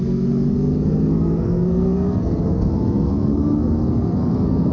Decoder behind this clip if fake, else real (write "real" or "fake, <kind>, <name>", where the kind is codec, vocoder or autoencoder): fake, codec, SNAC